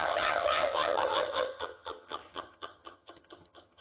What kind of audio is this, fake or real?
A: fake